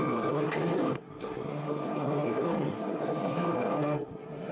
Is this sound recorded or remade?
remade